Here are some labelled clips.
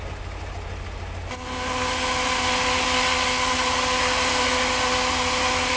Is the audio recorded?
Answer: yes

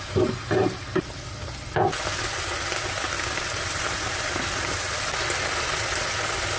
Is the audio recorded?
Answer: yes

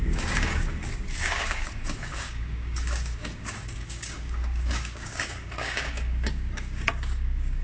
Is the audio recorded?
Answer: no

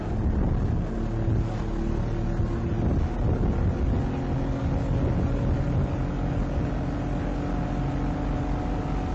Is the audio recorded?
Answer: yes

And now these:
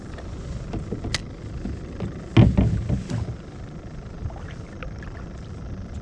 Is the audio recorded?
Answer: yes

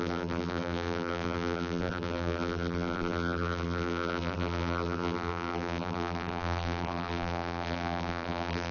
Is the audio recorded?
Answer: no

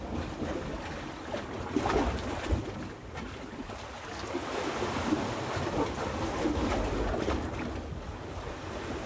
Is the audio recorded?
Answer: yes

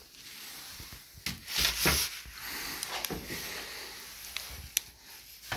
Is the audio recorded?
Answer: yes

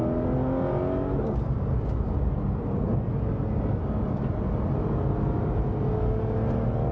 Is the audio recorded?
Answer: yes